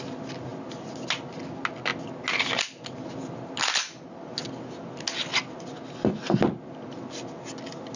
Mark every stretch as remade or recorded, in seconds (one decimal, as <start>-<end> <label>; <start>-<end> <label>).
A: 0.0-8.0 recorded